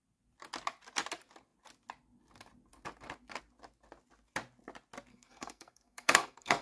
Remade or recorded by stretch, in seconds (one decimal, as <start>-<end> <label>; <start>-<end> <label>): 0.0-5.1 recorded; 5.1-6.6 remade